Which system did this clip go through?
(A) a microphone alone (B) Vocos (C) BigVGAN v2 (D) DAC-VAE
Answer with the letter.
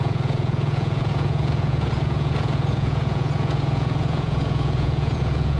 B